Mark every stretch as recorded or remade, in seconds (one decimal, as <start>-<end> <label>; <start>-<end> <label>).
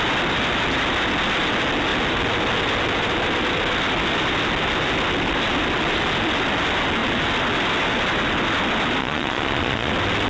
0.0-9.0 recorded; 9.0-9.9 remade; 9.9-10.3 recorded